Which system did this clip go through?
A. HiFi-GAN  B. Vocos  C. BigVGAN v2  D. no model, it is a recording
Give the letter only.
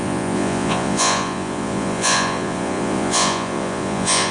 B